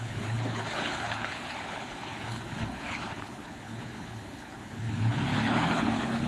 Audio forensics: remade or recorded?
remade